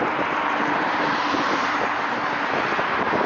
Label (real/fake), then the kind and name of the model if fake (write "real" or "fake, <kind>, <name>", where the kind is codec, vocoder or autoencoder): real